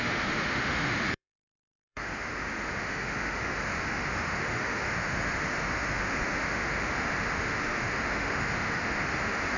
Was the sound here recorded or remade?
remade